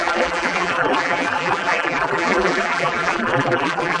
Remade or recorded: remade